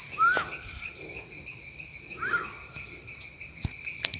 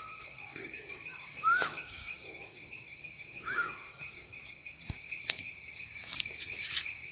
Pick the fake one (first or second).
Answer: second